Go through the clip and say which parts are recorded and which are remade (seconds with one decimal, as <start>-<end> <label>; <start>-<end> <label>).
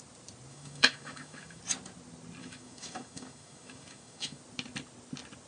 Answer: 0.0-0.5 recorded; 0.5-1.6 remade; 1.6-2.4 recorded; 2.4-4.4 remade; 4.4-5.5 recorded